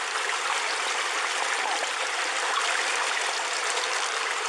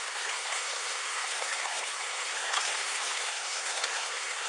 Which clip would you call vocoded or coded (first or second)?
second